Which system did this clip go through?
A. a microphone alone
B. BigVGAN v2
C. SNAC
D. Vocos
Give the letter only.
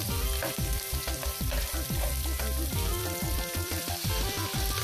B